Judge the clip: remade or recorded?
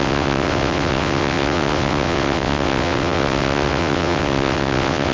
remade